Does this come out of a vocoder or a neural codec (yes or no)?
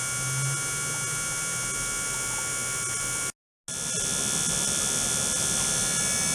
no